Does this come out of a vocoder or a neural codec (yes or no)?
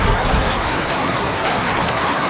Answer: yes